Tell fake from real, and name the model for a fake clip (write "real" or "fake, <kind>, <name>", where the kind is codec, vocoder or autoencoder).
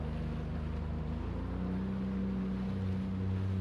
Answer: real